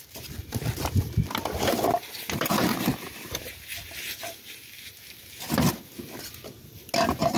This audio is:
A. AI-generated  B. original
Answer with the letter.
B